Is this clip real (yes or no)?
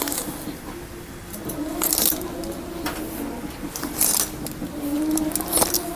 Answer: yes